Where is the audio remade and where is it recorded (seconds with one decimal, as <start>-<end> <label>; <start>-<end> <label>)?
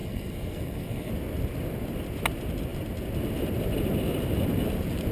0.0-1.1 remade; 1.1-5.1 recorded